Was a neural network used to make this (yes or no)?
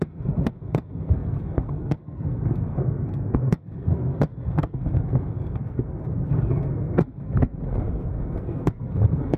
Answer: yes